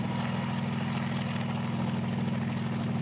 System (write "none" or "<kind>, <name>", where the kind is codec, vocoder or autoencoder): none